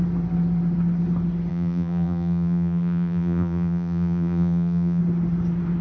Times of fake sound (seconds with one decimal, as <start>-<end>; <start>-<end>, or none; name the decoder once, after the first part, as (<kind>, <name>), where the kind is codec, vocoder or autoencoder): 1.5-5.0 (vocoder, BigVGAN v2)